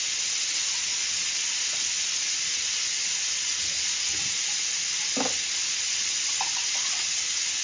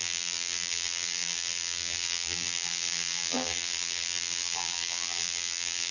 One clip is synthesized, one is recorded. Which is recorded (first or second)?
first